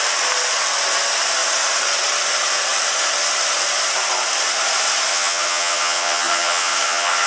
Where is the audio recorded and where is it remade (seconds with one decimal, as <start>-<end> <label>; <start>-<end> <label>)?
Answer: 0.0-5.1 recorded; 5.1-7.3 remade